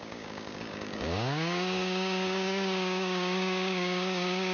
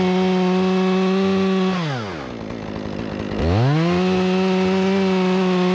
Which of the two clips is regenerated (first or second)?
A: first